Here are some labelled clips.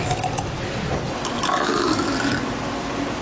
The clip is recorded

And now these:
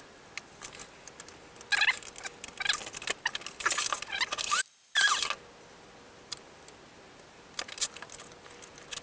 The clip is recorded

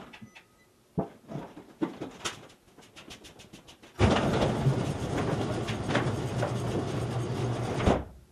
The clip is recorded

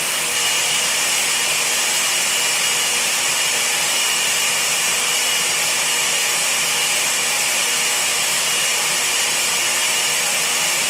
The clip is recorded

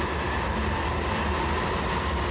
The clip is recorded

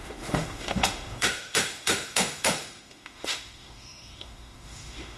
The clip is remade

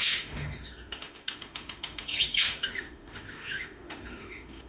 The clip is remade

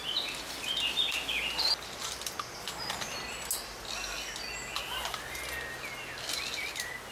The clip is recorded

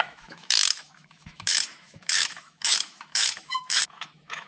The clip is remade